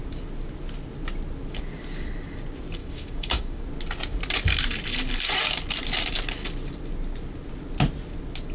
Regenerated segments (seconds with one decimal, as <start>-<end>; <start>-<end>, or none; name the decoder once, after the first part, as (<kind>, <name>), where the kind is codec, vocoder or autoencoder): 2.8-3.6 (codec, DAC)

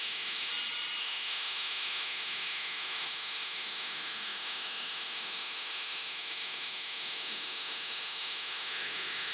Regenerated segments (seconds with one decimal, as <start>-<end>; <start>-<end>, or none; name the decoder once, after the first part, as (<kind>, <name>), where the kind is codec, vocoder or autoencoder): 0.0-0.5 (autoencoder, DAC-VAE); 1.0-9.3

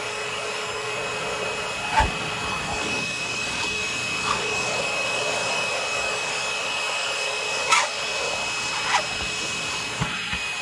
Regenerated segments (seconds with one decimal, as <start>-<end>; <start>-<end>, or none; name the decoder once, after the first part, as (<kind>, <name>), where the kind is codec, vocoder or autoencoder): 0.0-1.0 (codec, DAC); 2.5-8.1

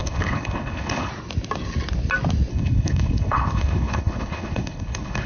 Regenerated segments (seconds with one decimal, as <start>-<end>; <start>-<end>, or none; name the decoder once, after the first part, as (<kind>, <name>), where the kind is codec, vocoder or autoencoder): 0.0-1.1 (codec, HILCodec); 2.5-5.3

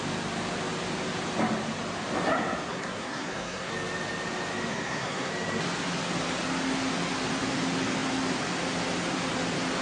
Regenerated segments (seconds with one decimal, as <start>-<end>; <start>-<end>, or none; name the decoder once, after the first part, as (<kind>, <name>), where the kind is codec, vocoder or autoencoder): 2.7-3.7 (codec, SNAC); 4.7-5.3

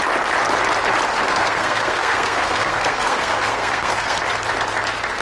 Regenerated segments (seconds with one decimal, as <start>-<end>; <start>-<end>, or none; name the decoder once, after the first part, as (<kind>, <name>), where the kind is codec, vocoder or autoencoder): 1.1-4.2 (codec, SNAC)

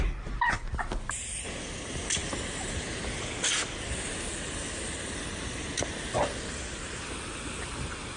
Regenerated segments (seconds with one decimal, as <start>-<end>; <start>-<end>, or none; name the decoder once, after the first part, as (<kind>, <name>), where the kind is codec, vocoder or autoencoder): none

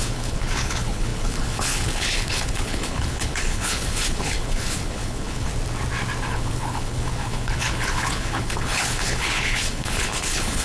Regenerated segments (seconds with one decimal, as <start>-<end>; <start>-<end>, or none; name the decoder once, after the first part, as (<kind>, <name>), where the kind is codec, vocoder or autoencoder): 0.0-5.5 (codec, HILCodec); 6.3-10.6